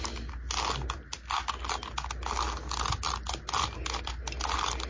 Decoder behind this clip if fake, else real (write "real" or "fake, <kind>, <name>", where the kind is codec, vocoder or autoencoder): real